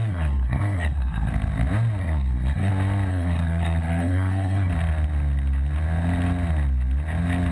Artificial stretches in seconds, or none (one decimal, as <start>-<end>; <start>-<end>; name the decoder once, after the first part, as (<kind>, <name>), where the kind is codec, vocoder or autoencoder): 0.0-1.3 (codec, SNAC); 2.0-2.7; 3.1-4.7